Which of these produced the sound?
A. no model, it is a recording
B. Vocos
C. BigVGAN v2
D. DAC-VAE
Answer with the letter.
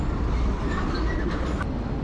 A